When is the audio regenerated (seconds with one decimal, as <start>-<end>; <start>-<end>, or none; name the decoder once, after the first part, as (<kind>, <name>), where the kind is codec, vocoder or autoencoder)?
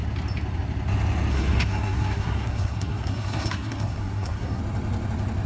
1.3-4.6 (codec, SNAC)